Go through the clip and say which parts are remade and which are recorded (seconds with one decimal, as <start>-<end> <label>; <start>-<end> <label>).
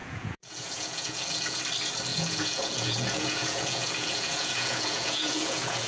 0.0-1.6 remade; 1.6-2.1 recorded; 2.1-5.9 remade